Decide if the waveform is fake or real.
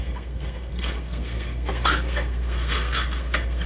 fake